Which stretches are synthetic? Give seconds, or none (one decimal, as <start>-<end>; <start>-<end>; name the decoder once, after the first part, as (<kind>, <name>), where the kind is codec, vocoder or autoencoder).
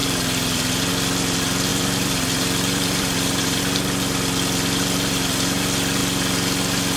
0.0-0.9 (vocoder, BigVGAN v2); 1.7-3.6